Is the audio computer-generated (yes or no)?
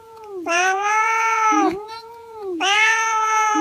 yes